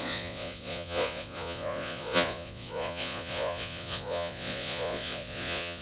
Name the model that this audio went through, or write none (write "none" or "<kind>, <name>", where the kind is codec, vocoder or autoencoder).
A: vocoder, Vocos